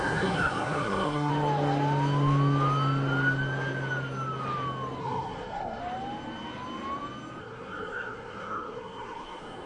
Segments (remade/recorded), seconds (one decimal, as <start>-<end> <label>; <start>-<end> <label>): 0.0-1.3 remade; 1.3-5.0 recorded; 5.0-5.8 remade; 5.8-7.4 recorded; 7.4-9.7 remade